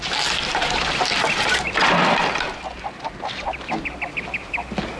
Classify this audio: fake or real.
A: real